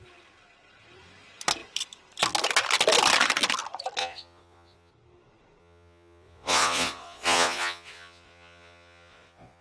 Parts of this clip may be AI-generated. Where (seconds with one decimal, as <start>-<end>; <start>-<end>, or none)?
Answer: 4.0-4.9; 5.6-9.6

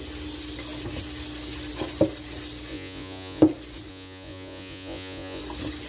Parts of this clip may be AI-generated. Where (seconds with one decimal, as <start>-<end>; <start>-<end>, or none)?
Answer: 2.7-3.4; 3.9-5.4

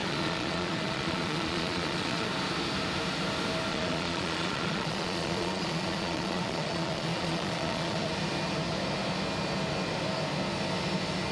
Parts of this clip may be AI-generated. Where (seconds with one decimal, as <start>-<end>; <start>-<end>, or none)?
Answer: 0.0-2.3; 3.7-8.1